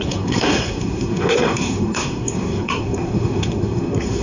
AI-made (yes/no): yes